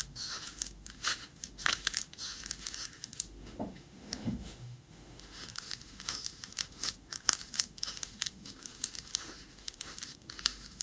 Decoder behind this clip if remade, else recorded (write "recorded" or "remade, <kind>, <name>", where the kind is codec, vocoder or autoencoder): remade, autoencoder, DAC-VAE